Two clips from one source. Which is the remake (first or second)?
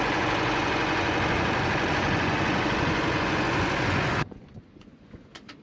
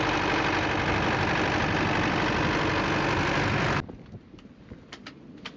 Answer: first